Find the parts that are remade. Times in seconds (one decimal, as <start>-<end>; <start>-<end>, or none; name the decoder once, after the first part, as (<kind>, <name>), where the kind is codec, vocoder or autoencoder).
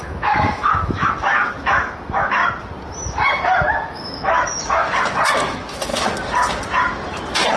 0.0-2.4 (autoencoder, DAC-VAE); 3.7-4.8; 5.5-5.9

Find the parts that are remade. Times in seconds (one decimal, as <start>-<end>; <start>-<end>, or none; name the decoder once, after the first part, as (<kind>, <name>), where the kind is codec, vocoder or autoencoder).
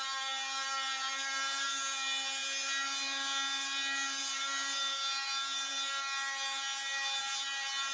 none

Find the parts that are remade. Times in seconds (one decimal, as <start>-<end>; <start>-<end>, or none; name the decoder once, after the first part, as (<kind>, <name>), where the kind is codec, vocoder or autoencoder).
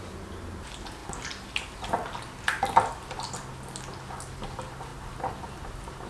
none